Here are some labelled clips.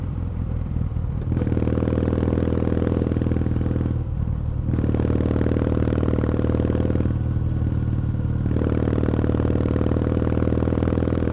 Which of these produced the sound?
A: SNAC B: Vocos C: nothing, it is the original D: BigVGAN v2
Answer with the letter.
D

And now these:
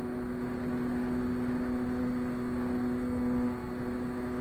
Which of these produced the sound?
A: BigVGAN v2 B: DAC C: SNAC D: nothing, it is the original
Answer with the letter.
D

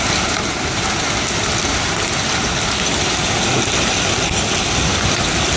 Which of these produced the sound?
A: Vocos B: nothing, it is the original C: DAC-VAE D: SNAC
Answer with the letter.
B